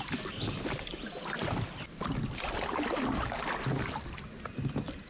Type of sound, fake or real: real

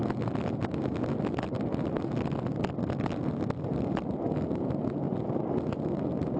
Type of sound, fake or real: real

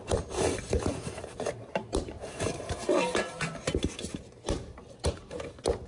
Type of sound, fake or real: fake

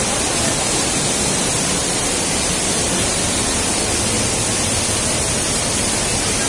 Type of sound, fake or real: real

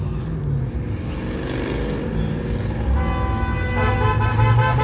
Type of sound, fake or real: real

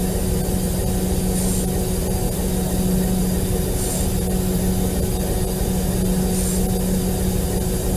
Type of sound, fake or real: real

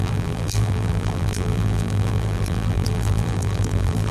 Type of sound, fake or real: fake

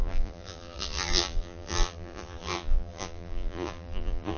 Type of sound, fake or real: fake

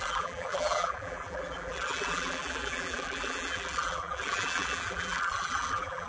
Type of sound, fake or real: fake